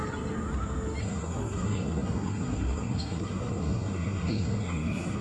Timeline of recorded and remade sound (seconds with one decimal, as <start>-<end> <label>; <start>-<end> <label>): 0.0-1.0 recorded; 1.0-5.2 remade